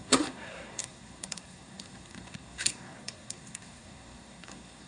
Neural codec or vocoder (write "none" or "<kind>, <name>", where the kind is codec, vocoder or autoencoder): codec, SNAC